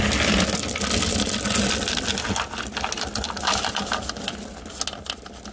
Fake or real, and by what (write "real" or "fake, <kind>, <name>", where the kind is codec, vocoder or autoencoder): real